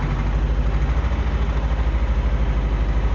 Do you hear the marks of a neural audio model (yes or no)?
no